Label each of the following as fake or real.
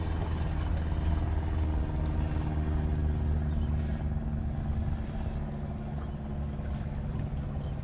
real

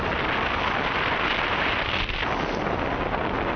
real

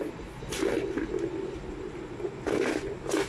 real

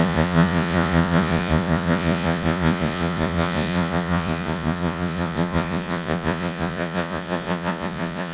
fake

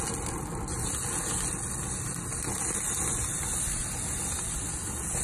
real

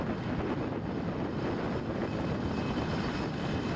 real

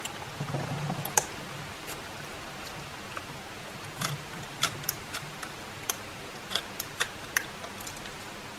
fake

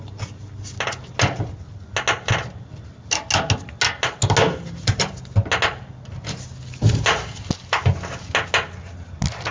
real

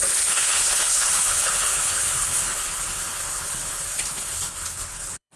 fake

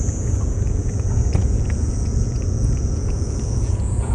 fake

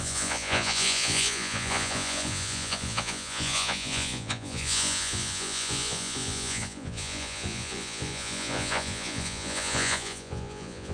fake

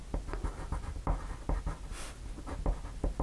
real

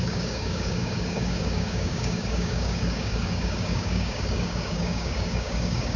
fake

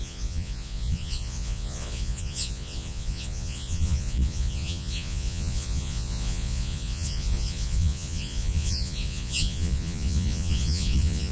fake